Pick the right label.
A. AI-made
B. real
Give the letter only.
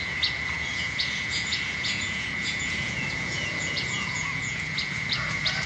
A